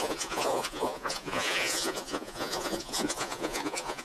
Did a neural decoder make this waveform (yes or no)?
yes